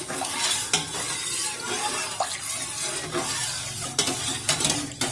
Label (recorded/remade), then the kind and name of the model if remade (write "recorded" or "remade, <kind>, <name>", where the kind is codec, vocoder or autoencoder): recorded